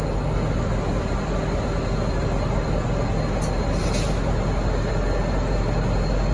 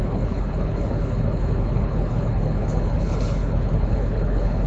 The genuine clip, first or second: first